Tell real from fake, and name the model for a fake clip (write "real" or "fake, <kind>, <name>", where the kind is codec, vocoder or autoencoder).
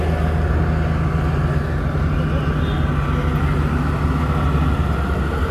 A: real